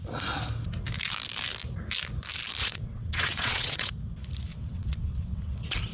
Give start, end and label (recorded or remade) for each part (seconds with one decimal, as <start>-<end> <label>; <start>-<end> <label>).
0.0-2.6 recorded; 2.6-3.9 remade; 3.9-4.5 recorded; 4.5-5.5 remade; 5.5-5.9 recorded